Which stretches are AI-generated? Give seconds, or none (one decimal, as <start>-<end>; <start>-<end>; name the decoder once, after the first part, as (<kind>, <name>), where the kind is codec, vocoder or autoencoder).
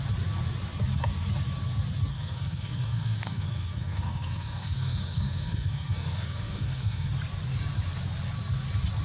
2.1-7.1 (codec, SNAC)